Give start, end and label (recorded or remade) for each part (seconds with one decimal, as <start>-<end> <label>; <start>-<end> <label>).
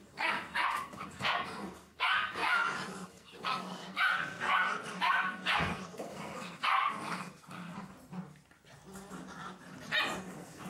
0.0-7.9 remade; 7.9-10.2 recorded; 10.2-10.7 remade